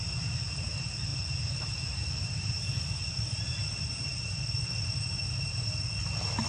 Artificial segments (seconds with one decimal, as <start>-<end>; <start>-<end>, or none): none